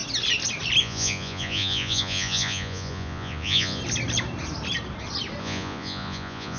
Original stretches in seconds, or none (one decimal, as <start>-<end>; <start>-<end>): 0.0-0.8; 3.8-5.4